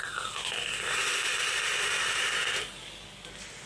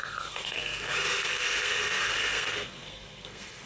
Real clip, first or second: first